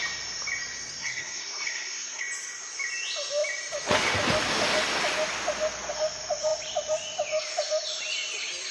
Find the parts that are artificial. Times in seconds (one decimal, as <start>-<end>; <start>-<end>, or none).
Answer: 1.0-2.2